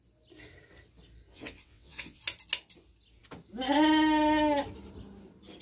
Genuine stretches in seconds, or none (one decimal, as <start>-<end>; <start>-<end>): 0.0-1.3; 2.2-5.6